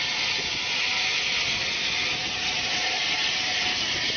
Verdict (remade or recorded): recorded